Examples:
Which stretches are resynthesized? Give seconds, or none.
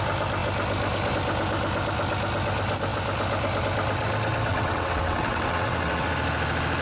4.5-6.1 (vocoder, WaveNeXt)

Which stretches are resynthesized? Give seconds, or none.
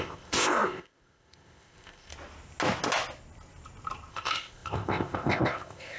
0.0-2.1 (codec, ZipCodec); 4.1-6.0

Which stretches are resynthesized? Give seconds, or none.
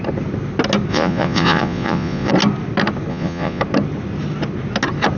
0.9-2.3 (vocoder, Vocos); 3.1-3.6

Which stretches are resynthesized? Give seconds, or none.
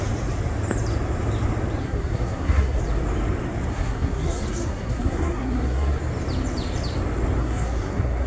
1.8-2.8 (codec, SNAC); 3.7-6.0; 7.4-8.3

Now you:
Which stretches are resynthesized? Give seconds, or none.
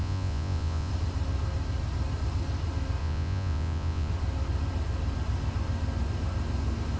0.0-0.9 (vocoder, Vocos); 3.0-4.1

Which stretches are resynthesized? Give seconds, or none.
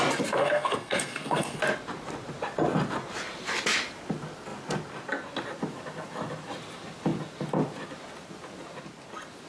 0.4-1.6 (codec, SNAC)